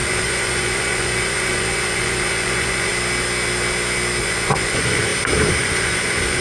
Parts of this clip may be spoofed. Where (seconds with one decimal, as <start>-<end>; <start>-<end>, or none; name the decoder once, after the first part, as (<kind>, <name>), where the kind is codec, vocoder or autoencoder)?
0.0-2.9 (vocoder, Vocos); 4.2-5.1; 5.6-6.4